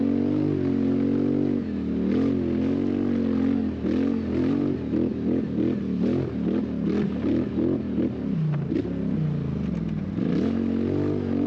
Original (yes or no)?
yes